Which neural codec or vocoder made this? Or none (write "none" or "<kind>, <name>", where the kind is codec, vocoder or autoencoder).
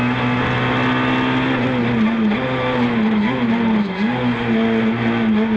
none